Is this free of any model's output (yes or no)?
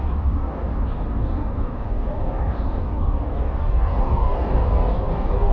no